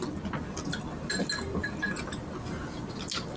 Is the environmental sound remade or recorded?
recorded